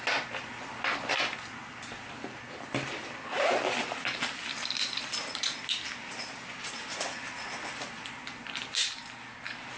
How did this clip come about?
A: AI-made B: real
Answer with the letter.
B